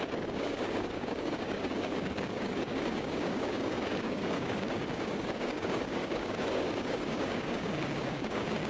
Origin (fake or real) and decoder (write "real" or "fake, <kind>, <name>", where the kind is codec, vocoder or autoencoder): fake, codec, DAC